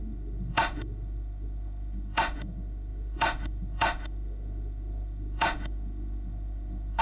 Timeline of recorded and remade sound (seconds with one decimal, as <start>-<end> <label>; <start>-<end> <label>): 0.0-7.0 remade